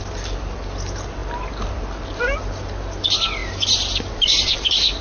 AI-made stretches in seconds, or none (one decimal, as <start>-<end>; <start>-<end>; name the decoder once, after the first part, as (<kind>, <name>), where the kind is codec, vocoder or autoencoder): none